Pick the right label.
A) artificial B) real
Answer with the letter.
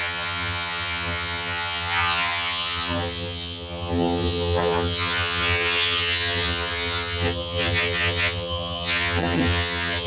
A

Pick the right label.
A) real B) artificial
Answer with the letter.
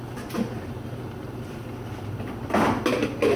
A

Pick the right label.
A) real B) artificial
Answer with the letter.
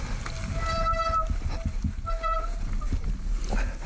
A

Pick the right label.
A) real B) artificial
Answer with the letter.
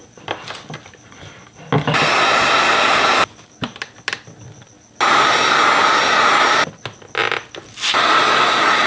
A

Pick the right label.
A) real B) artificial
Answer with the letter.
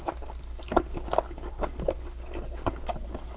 A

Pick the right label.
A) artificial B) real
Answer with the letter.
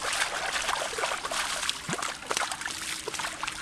B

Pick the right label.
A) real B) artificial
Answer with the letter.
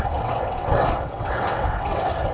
B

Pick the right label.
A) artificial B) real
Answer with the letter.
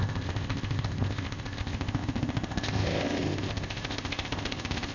A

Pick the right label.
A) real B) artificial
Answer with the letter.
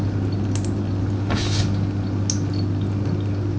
A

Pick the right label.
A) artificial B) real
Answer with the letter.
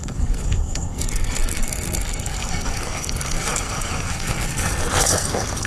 A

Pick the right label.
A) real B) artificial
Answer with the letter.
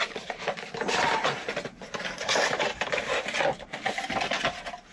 A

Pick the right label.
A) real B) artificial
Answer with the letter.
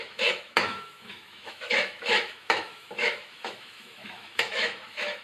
B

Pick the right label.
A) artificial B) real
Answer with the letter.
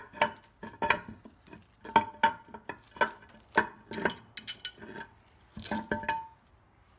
B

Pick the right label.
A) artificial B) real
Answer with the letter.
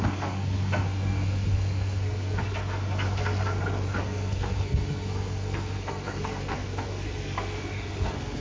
A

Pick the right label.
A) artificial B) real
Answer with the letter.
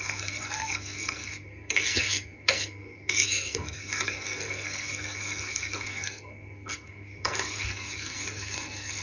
A